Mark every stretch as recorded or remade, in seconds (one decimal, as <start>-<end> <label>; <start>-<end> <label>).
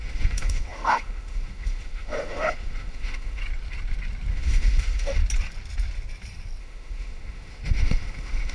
0.0-3.4 remade; 3.4-4.3 recorded; 4.3-5.2 remade; 5.2-6.6 recorded; 6.6-8.5 remade